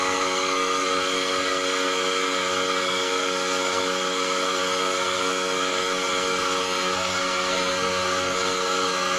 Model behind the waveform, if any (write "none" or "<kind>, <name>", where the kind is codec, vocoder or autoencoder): codec, SNAC